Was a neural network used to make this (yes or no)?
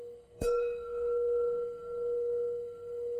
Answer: yes